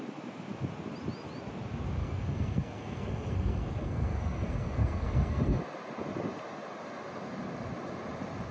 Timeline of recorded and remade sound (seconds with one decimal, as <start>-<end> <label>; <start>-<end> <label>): 0.0-2.0 recorded; 2.0-5.6 remade; 5.6-8.5 recorded